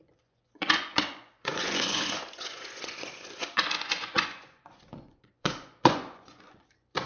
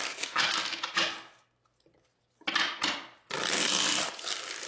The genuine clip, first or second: second